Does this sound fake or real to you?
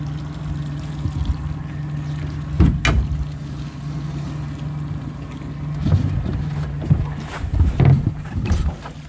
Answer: real